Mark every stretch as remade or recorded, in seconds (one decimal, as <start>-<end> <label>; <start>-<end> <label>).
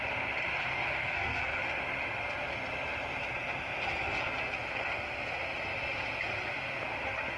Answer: 0.0-0.6 recorded; 0.6-1.6 remade; 1.6-7.4 recorded